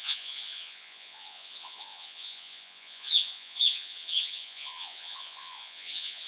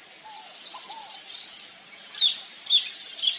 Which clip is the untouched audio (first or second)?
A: second